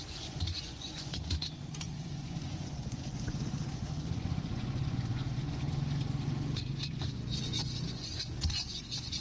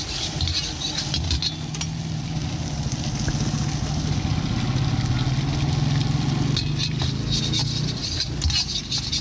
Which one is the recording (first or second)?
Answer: second